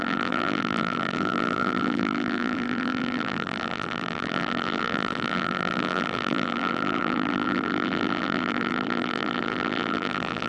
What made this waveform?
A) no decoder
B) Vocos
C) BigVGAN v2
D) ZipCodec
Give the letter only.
C